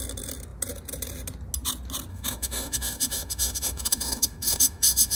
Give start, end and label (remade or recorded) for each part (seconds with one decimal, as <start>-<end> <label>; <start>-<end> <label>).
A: 0.0-2.1 recorded; 2.1-5.2 remade